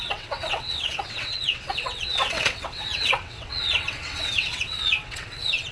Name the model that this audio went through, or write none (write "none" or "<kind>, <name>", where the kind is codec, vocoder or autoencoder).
vocoder, WaveNeXt